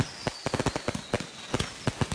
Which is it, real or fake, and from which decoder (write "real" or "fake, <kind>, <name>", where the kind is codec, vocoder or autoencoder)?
real